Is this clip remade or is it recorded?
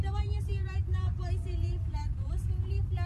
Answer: remade